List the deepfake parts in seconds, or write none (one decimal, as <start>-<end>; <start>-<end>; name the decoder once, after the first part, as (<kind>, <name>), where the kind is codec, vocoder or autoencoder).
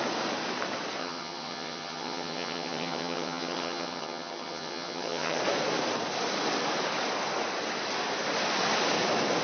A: 1.0-5.4 (vocoder, HiFi-GAN)